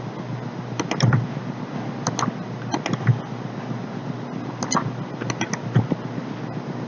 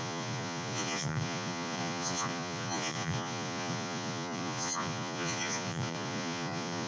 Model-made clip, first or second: second